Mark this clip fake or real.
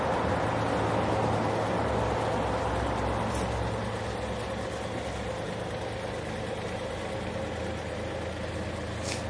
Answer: real